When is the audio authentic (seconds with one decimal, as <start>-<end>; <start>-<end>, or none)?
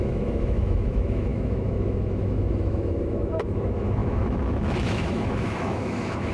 none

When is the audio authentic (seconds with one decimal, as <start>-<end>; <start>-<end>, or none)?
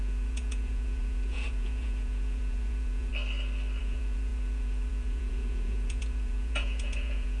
3.1-3.8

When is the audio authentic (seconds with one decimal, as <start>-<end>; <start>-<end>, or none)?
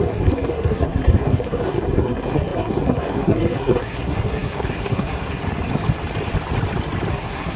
5.4-7.1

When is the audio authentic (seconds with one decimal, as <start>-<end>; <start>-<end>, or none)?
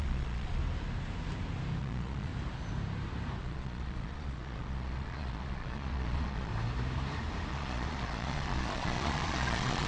0.6-1.8; 2.3-3.4; 6.5-7.5